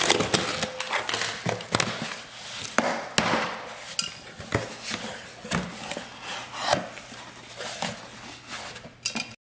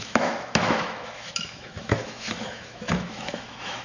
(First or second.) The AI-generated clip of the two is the second